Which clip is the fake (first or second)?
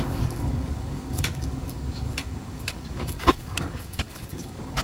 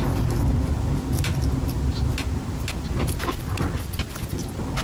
first